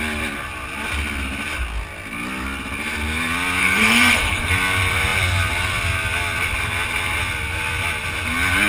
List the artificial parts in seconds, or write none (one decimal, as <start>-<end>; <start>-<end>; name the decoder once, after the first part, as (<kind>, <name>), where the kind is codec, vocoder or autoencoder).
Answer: 3.6-4.5 (codec, SNAC)